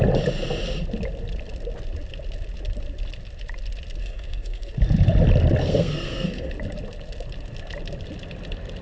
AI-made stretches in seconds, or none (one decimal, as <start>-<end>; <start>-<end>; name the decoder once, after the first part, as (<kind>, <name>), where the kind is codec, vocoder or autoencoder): 4.0-4.7 (codec, SNAC); 5.6-6.5